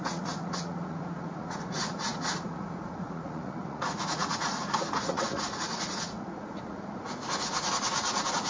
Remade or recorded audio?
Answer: remade